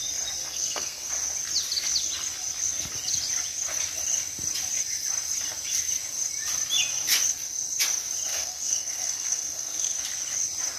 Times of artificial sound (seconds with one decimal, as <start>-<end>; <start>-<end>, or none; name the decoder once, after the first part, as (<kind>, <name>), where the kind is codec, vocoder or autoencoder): 0.4-1.1 (codec, SNAC); 8.3-10.0